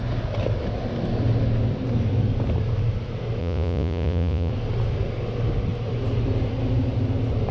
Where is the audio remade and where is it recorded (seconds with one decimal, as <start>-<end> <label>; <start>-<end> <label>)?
0.0-3.4 recorded; 3.4-4.5 remade; 4.5-7.5 recorded